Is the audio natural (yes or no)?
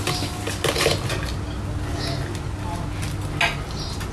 yes